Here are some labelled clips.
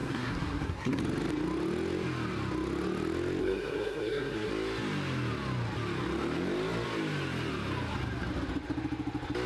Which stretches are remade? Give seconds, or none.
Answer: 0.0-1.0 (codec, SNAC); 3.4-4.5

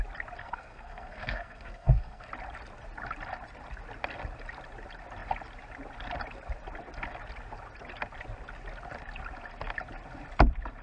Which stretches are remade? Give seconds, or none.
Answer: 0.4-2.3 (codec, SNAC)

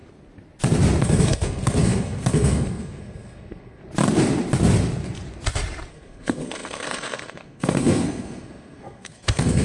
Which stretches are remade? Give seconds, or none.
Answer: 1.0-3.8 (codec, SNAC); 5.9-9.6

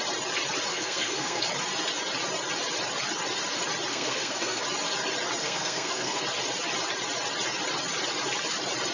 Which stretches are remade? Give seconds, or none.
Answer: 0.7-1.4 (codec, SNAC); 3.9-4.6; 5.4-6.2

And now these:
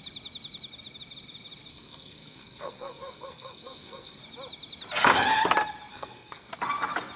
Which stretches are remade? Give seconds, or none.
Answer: 1.7-4.2 (codec, SNAC); 5.9-6.5

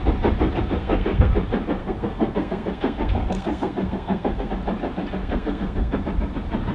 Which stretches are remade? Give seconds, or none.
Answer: 0.8-1.3 (codec, SNAC); 1.8-4.5; 5.2-6.0